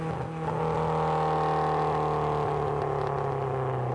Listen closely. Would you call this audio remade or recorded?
recorded